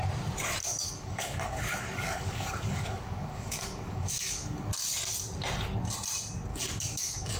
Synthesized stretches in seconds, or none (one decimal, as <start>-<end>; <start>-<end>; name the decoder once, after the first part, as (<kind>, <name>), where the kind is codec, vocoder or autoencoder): 0.6-4.7 (codec, DAC); 6.5-7.4

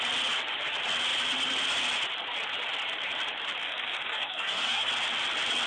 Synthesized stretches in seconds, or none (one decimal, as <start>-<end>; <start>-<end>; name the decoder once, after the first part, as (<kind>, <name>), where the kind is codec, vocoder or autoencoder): 3.6-4.9 (codec, DAC)

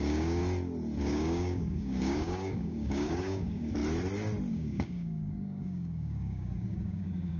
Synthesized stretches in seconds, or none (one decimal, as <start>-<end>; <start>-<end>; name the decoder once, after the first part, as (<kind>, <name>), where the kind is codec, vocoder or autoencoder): 0.0-0.4 (codec, DAC); 1.0-3.8; 4.5-7.4

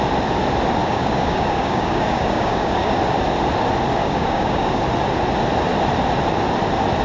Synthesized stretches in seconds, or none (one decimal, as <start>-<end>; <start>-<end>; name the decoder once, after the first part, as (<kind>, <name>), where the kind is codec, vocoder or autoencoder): 0.8-3.0 (codec, DAC); 4.0-4.8

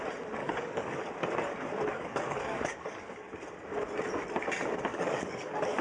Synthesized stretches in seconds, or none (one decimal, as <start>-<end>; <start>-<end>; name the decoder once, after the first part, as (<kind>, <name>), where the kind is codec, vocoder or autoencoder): 0.4-1.1 (codec, DAC); 1.9-3.3; 4.9-5.8

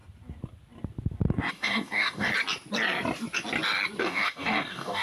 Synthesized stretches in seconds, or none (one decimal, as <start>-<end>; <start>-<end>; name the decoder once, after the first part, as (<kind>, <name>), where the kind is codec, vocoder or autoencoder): 1.5-2.3 (codec, DAC); 4.0-5.0

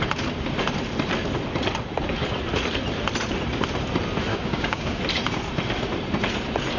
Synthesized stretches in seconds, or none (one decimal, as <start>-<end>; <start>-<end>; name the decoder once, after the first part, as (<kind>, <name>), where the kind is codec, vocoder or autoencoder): 4.3-5.0 (codec, DAC)